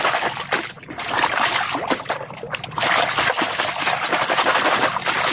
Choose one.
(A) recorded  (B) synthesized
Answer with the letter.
A